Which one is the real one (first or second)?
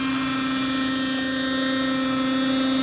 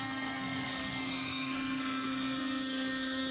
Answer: first